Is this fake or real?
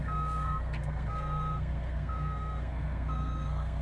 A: fake